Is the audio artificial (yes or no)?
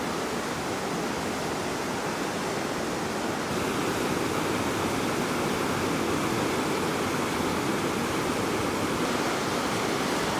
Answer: no